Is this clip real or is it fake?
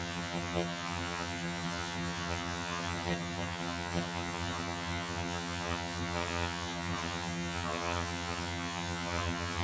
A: fake